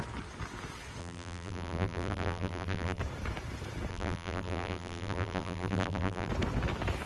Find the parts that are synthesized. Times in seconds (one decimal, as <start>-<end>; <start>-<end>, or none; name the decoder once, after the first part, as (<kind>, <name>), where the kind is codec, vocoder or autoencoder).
1.0-3.0 (vocoder, BigVGAN v2); 3.9-6.3

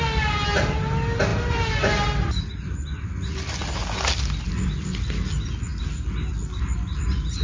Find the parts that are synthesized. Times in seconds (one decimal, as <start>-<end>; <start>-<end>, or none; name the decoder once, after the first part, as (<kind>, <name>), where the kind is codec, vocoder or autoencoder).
none

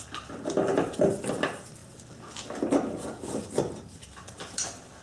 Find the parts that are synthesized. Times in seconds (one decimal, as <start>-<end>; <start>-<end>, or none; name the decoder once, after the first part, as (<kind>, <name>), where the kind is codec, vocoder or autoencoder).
none